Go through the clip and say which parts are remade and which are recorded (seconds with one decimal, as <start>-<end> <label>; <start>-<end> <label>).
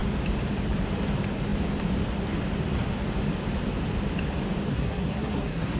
0.0-4.7 recorded; 4.7-5.8 remade